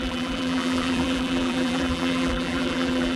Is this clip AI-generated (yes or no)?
yes